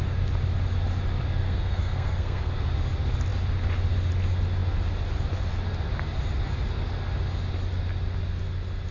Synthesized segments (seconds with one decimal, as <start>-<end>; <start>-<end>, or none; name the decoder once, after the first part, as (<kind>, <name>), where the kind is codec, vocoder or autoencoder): 1.4-2.5 (codec, SNAC)